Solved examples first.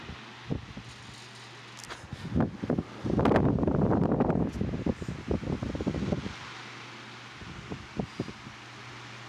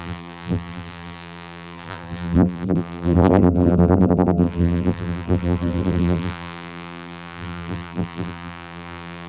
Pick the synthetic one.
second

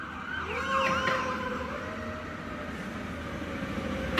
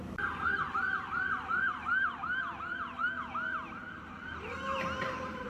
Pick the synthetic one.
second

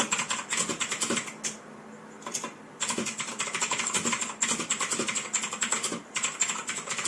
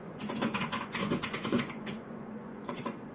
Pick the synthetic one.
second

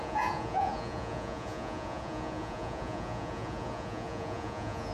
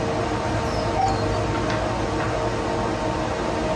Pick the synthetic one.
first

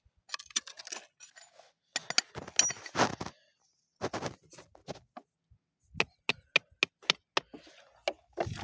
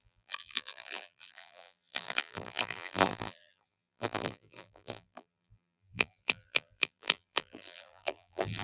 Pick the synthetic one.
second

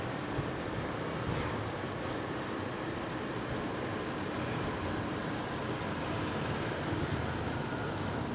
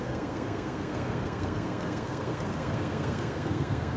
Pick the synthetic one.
second